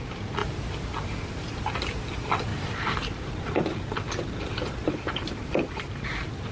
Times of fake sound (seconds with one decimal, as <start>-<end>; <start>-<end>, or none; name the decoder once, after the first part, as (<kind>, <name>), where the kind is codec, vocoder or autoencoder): 2.5-6.5 (vocoder, BigVGAN v2)